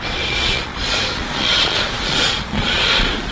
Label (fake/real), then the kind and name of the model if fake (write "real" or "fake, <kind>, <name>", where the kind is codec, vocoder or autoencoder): fake, vocoder, Vocos